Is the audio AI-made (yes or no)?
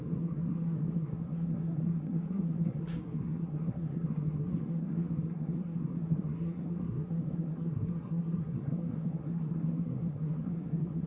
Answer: yes